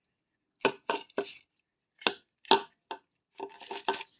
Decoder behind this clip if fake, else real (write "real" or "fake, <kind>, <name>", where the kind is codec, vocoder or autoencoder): real